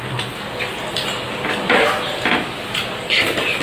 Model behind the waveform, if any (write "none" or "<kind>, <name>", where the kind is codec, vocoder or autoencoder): none